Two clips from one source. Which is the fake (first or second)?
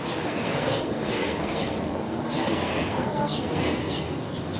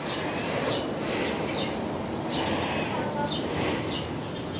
first